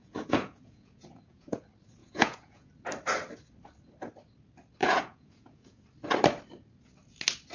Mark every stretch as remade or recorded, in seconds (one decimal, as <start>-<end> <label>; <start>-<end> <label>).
0.0-1.6 remade; 1.6-2.0 recorded; 2.0-2.7 remade; 2.7-4.8 recorded; 4.8-5.8 remade; 5.8-7.5 recorded